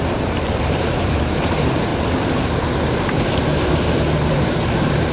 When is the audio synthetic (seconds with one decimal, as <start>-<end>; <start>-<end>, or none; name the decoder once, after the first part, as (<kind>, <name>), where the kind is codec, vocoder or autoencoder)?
0.0-1.9 (vocoder, BigVGAN v2); 4.3-5.1